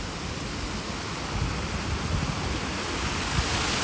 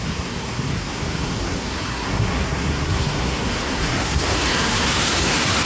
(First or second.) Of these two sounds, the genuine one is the first